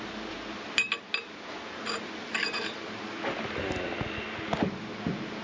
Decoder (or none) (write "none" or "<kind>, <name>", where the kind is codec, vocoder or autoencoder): none